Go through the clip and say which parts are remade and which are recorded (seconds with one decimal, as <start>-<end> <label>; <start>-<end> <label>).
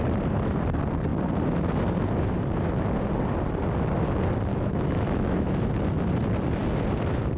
0.0-4.5 recorded; 4.5-5.7 remade; 5.7-7.4 recorded